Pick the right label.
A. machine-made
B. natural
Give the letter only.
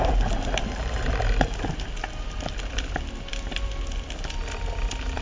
B